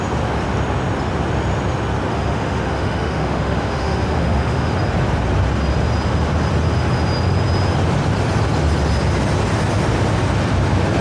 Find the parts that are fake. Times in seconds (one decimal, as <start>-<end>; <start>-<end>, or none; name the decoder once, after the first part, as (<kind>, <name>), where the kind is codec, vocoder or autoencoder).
2.1-4.7 (autoencoder, DAC-VAE)